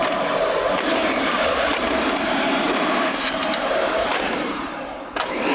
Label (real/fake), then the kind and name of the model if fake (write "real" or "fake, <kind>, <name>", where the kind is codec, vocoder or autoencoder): fake, vocoder, BigVGAN v2